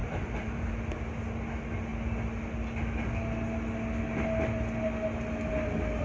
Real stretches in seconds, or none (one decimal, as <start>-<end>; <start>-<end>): 0.7-6.0